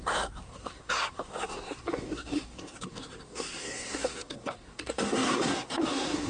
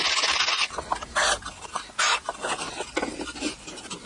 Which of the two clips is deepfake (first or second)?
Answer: first